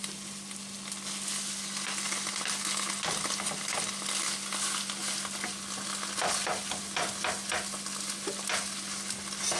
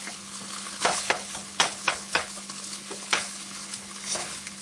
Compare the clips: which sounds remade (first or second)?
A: second